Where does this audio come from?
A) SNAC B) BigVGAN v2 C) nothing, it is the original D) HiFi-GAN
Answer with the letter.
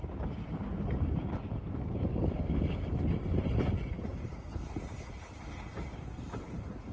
C